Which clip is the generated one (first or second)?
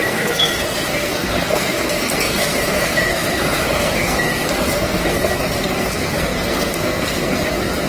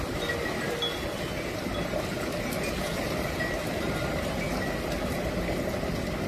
first